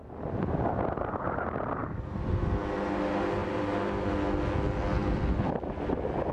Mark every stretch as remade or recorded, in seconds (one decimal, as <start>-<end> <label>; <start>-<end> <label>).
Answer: 0.0-3.4 recorded; 3.4-4.1 remade; 4.1-5.0 recorded; 5.0-6.3 remade